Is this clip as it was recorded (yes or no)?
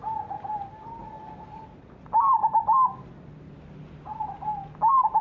yes